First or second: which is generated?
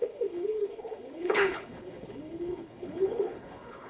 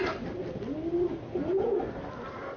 first